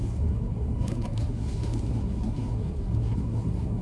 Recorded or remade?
remade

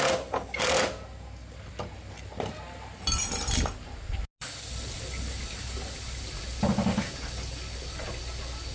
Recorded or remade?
recorded